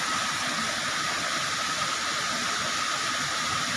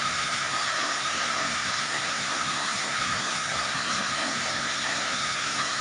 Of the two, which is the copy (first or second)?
second